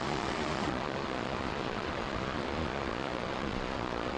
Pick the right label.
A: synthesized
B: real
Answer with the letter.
A